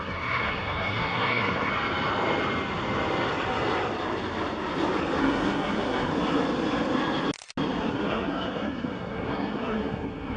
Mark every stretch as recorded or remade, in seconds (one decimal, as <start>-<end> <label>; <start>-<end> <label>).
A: 0.0-1.7 remade; 1.7-5.2 recorded; 5.2-6.1 remade; 6.1-7.9 recorded; 7.9-10.4 remade